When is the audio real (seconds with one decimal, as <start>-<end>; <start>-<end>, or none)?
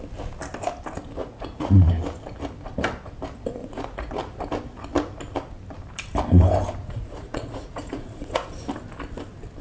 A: 0.0-1.2; 1.9-3.6; 4.1-6.8; 8.5-9.6